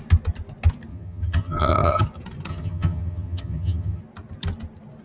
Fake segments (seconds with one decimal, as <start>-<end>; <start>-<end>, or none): 0.9-2.0; 2.5-4.0